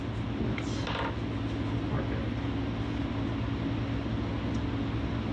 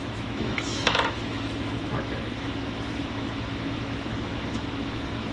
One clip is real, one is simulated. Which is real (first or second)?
first